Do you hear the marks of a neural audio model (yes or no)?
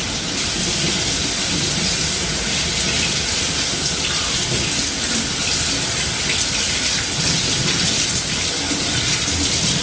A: no